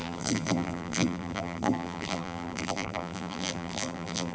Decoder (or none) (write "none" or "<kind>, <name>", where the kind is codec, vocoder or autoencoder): vocoder, BigVGAN v2